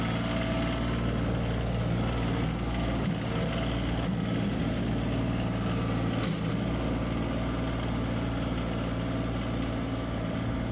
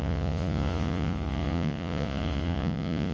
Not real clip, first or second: second